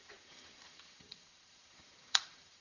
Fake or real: fake